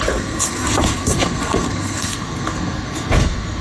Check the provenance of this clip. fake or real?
fake